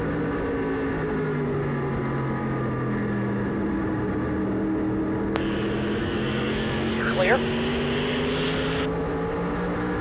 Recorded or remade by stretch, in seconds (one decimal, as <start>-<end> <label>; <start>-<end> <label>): 0.0-6.0 recorded; 6.0-6.9 remade; 6.9-10.0 recorded

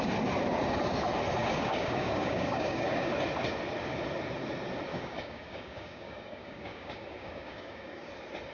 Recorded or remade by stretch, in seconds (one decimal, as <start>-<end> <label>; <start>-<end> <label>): 0.0-1.4 recorded; 1.4-3.1 remade; 3.1-4.9 recorded; 4.9-8.1 remade; 8.1-8.5 recorded